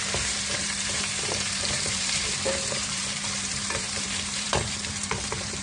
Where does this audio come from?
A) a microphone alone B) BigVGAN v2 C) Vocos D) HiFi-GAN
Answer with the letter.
B